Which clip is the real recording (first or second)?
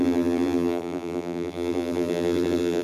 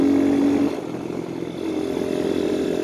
second